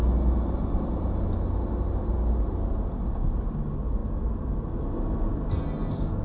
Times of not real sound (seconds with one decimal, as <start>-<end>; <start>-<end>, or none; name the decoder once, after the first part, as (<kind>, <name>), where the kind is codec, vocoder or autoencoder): none